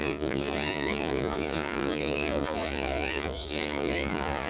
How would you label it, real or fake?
fake